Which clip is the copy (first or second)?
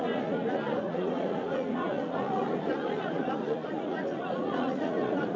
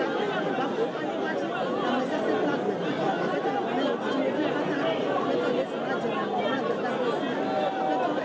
first